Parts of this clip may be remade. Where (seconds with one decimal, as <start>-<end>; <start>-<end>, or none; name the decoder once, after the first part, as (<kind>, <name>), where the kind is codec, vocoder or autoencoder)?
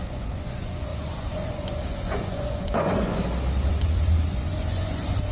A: 0.0-3.1 (vocoder, Vocos); 3.7-5.3